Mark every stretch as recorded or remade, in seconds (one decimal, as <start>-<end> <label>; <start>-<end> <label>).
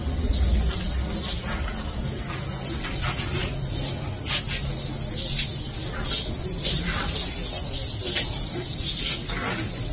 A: 0.0-9.9 recorded